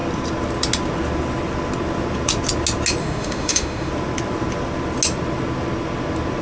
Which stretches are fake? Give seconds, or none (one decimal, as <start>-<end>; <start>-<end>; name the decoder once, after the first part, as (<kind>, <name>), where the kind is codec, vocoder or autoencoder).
3.0-3.9 (autoencoder, DAC-VAE)